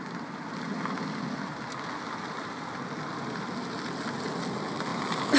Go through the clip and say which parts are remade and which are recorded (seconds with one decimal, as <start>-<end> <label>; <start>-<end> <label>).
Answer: 0.0-5.4 recorded